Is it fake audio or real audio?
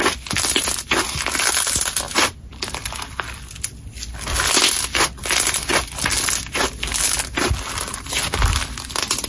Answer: real